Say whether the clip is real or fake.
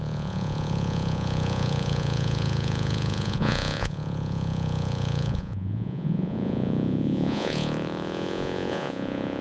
fake